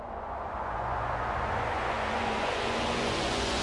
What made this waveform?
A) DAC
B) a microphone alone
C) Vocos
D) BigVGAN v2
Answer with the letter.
C